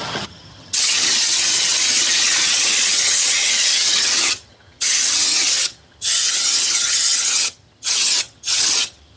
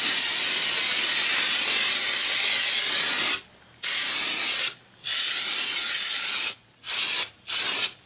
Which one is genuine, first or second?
second